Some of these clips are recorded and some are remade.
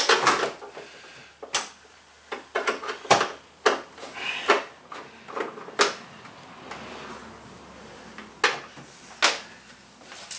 recorded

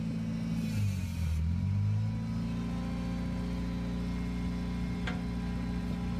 recorded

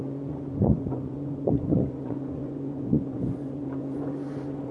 remade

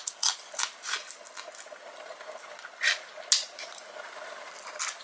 recorded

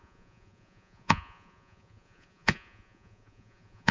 remade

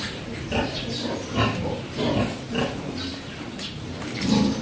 recorded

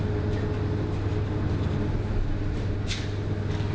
recorded